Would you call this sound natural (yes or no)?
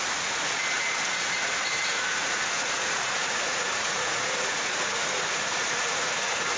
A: no